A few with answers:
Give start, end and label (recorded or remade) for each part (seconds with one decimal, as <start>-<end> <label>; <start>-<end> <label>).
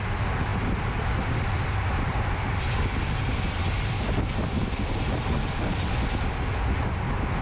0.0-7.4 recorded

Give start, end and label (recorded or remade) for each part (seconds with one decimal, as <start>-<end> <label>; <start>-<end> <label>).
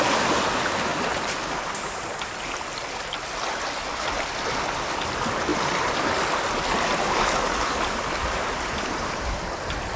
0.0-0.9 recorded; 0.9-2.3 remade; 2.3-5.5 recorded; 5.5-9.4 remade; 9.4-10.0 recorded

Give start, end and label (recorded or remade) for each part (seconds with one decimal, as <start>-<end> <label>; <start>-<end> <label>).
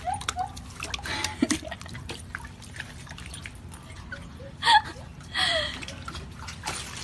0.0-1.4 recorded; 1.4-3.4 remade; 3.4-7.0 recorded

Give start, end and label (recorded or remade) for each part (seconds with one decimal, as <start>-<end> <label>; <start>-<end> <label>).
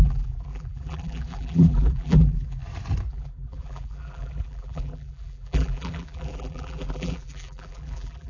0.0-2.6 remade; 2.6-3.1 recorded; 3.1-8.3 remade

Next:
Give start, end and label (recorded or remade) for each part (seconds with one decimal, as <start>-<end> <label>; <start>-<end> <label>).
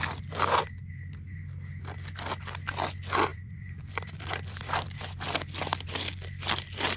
0.0-3.3 recorded; 3.3-5.0 remade; 5.0-7.0 recorded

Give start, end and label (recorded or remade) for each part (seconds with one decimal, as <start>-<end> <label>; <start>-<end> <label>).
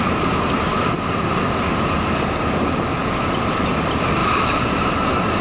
0.0-4.2 recorded; 4.2-5.4 remade